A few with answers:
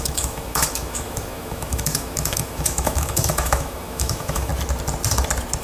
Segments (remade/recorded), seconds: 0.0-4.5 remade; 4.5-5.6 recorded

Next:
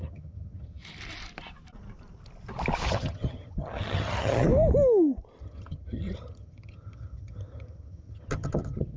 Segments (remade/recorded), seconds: 0.0-0.8 remade; 0.8-2.9 recorded; 2.9-4.5 remade; 4.5-5.4 recorded; 5.4-9.0 remade

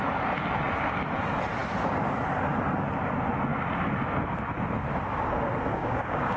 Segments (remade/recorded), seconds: 0.0-5.7 recorded; 5.7-6.4 remade

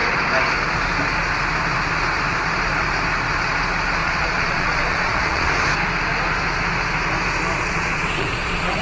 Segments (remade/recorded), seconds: 0.0-4.0 recorded; 4.0-5.5 remade; 5.5-7.6 recorded; 7.6-8.8 remade

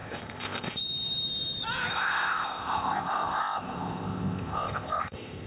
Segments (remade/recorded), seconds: 0.0-0.8 remade; 0.8-1.9 recorded; 1.9-5.5 remade

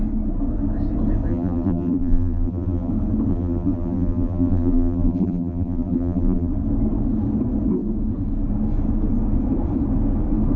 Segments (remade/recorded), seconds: 0.0-1.3 recorded; 1.3-2.9 remade; 2.9-3.3 recorded; 3.3-6.5 remade; 6.5-10.6 recorded